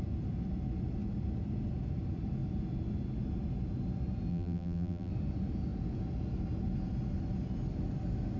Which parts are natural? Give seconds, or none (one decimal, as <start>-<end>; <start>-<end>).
0.0-4.3; 5.1-8.4